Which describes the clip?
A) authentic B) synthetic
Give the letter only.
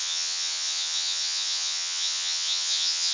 B